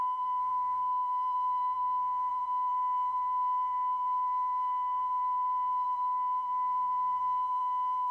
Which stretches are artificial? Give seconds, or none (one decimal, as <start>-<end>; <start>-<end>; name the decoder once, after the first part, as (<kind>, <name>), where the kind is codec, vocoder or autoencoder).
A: 0.0-8.1 (codec, SNAC)